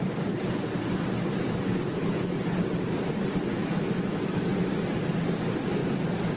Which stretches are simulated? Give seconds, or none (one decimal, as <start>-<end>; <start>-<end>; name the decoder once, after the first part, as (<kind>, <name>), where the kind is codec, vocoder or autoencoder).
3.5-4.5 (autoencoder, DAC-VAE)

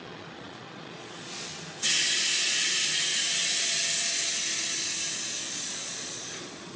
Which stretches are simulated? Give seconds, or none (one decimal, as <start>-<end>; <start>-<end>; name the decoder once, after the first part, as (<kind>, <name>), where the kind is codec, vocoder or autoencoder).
0.0-1.5 (vocoder, Vocos); 5.5-6.8

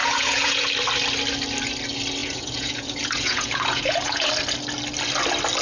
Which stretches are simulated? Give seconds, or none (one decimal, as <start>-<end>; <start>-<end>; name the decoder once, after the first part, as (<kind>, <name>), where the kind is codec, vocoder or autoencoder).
0.0-0.7 (vocoder, Vocos); 2.2-4.3

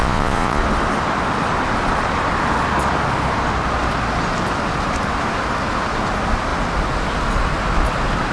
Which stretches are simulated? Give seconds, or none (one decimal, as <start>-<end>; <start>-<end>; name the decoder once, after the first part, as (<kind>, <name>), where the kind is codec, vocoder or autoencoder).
0.0-0.6 (vocoder, Vocos)

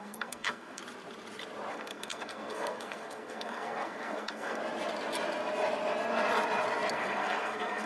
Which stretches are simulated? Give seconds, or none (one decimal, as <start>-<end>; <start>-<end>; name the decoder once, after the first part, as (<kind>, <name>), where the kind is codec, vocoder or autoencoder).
0.0-0.8 (codec, SNAC); 1.7-4.6; 6.9-7.9